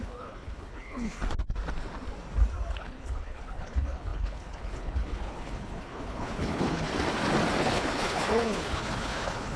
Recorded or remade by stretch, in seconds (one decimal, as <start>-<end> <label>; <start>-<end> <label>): 0.0-1.2 remade; 1.2-2.8 recorded; 2.8-6.9 remade; 6.9-7.6 recorded; 7.6-9.6 remade